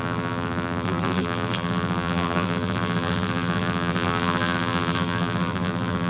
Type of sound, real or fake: fake